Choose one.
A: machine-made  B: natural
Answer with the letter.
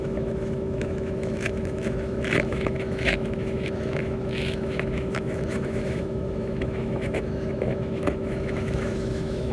A